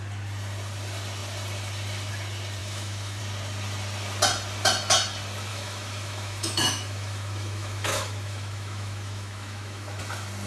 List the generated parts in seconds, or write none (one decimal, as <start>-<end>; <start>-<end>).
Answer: 2.6-3.2; 5.5-10.0